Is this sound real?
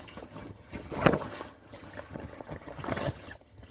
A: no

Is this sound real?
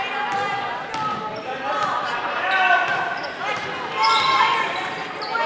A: yes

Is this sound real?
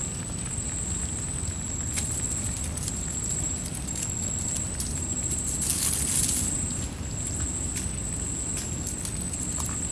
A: yes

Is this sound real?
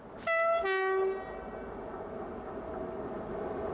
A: yes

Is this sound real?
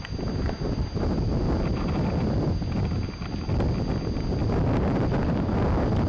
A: yes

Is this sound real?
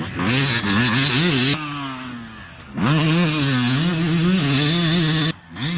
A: yes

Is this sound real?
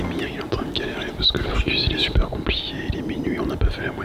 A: yes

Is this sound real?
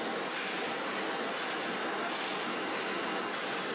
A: yes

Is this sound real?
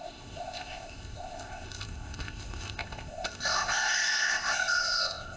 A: no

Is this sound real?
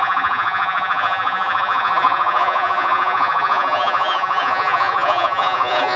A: no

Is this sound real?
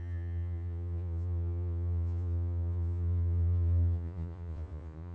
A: no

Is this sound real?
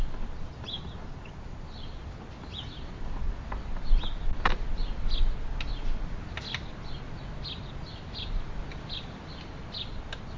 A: yes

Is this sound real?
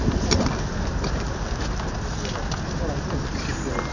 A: yes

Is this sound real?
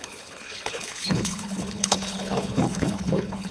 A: no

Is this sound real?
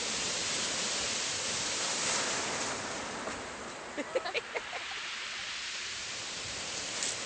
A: yes